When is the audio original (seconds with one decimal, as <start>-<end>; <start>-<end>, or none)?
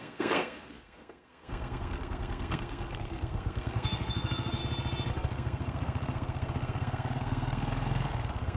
4.6-5.1